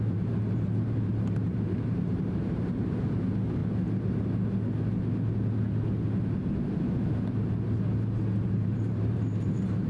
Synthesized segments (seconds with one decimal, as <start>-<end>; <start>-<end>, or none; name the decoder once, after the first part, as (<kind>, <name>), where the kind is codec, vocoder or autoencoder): 0.0-3.6 (vocoder, BigVGAN v2); 8.4-9.9